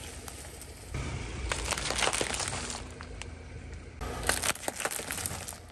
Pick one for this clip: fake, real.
real